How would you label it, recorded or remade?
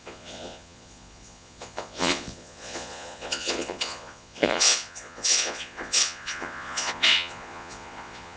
remade